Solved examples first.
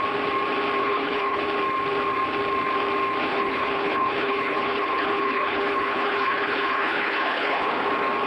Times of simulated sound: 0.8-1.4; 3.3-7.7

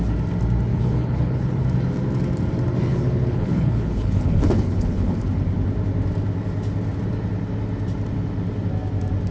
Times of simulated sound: 0.7-1.6; 2.9-5.2

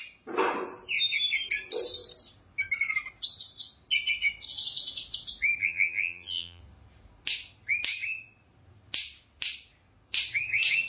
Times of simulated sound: 5.6-6.6

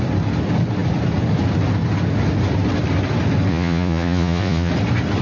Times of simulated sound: 3.5-4.7

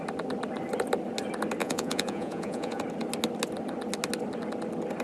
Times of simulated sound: 1.6-2.8

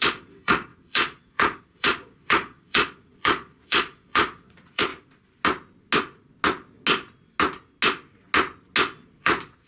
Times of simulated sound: 0.0-4.9; 9.2-9.7

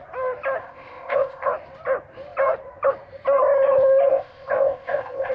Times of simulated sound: 0.6-1.5; 4.1-5.3